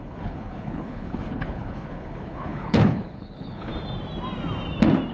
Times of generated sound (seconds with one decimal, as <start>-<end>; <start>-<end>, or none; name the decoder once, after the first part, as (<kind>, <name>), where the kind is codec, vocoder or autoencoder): 0.0-3.7 (codec, HILCodec)